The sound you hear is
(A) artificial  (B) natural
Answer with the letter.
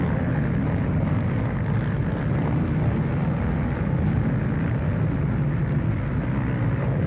B